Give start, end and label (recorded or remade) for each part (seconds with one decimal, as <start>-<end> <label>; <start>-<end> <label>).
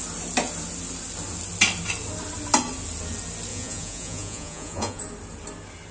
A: 0.0-3.5 recorded; 3.5-5.0 remade; 5.0-5.9 recorded